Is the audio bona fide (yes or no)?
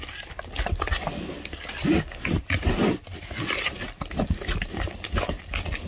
yes